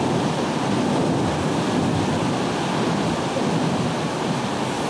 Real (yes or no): yes